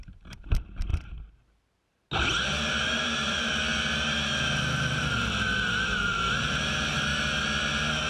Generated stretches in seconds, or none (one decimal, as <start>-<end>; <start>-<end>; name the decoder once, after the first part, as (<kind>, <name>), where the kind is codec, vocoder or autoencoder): 0.0-0.9 (vocoder, BigVGAN v2); 2.7-3.7; 5.7-7.1